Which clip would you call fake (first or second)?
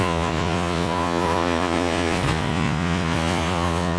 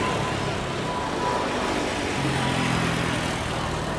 first